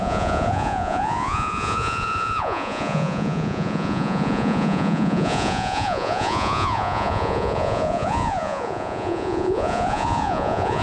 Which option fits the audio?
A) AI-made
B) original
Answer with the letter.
A